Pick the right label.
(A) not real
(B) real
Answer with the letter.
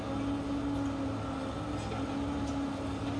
B